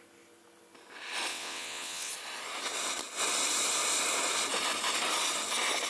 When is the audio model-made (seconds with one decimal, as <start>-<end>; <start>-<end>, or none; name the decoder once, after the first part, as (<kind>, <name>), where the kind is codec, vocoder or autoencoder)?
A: 1.3-2.1 (vocoder, WaveNeXt)